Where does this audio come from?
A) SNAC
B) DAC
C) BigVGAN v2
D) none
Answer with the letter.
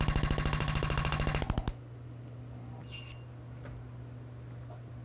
D